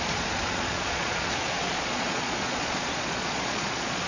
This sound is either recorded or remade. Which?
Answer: remade